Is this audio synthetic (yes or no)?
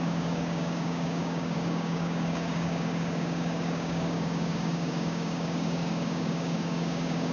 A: yes